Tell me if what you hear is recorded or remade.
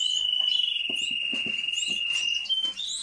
recorded